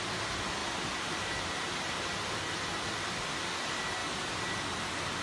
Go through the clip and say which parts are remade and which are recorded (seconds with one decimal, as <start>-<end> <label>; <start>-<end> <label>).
0.0-5.2 recorded